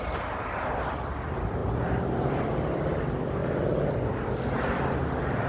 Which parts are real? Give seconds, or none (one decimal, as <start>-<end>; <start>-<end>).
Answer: 0.0-5.5